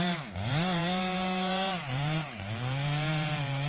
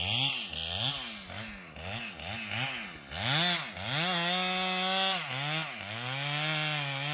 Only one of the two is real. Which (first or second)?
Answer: second